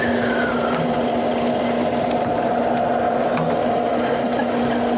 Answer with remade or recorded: recorded